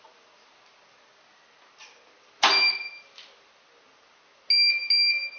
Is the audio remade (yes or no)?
no